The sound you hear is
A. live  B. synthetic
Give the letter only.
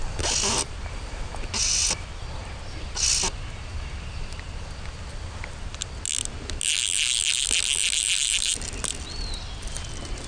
A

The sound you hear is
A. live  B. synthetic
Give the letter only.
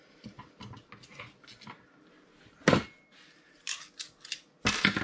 A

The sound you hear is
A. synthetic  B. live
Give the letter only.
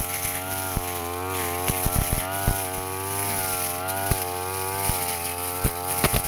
B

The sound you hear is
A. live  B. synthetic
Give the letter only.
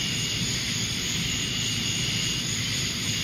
A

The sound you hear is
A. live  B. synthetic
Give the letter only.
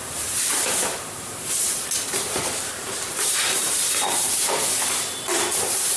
B